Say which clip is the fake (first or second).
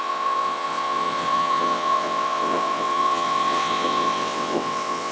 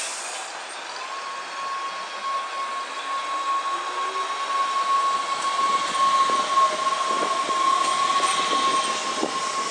first